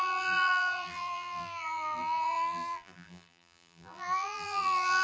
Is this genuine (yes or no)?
no